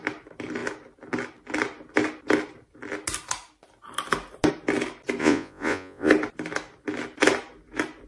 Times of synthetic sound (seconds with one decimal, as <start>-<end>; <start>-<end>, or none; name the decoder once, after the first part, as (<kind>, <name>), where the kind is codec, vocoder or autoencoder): 5.2-6.1 (vocoder, Vocos)